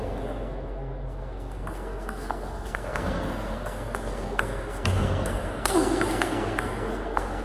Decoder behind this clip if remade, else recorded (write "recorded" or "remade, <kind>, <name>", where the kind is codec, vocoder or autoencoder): remade, codec, SNAC